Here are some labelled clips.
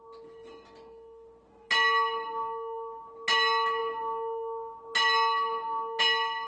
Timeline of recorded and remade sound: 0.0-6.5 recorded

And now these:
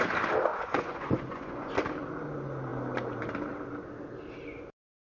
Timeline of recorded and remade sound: 0.0-0.5 recorded; 0.5-1.7 remade; 1.7-5.0 recorded